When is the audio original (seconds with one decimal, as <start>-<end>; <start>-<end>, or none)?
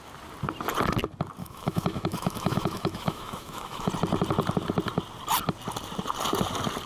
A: 0.0-1.4; 3.9-6.9